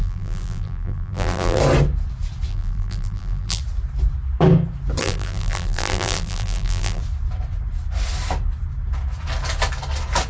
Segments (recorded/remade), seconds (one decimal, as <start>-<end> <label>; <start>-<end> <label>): 0.0-1.6 remade; 1.6-2.5 recorded; 2.5-3.6 remade; 3.6-5.0 recorded; 5.0-7.0 remade; 7.0-10.3 recorded